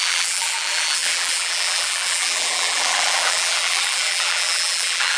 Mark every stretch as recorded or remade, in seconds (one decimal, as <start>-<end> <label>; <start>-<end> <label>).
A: 0.0-5.2 remade